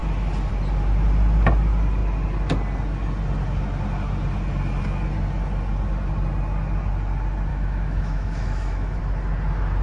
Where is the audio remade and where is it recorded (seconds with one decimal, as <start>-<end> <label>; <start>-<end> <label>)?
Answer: 0.0-7.5 recorded; 7.5-9.0 remade; 9.0-9.8 recorded